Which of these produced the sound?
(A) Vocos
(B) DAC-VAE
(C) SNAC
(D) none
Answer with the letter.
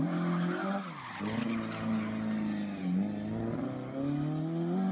D